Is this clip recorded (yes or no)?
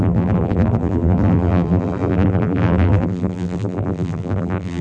no